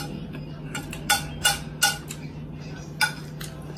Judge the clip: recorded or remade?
recorded